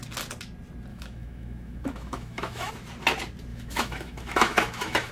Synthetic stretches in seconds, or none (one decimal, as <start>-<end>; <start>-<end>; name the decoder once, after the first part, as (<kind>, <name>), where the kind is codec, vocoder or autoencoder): 0.9-2.7 (autoencoder, DAC-VAE); 3.5-5.1